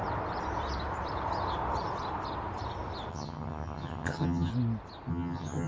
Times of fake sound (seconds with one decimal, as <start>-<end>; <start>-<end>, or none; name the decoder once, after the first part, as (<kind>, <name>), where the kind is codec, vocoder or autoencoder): 3.1-4.5 (vocoder, HiFi-GAN); 5.1-5.7